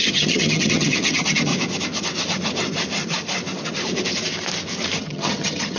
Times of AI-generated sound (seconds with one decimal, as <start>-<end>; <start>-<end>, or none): 0.0-1.5; 5.0-5.8

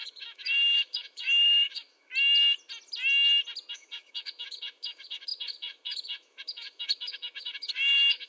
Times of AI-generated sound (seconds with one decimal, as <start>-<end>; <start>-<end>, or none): 0.0-2.1; 3.7-8.3

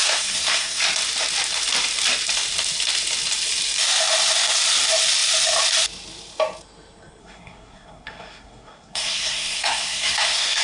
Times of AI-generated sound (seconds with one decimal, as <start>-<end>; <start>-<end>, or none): 0.0-0.8; 7.2-10.6

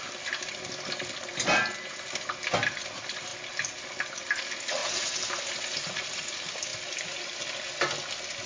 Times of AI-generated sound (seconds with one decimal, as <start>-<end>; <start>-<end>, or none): 4.8-6.3